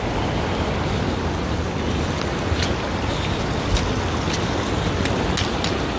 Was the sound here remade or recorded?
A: recorded